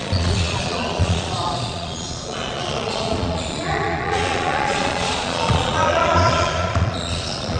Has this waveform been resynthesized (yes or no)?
yes